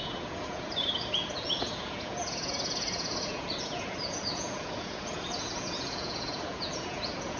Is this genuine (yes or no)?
no